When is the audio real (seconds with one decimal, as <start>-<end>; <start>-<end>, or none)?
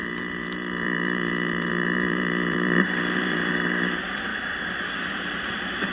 4.3-5.1